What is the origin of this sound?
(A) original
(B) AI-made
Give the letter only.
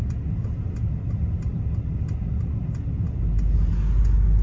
A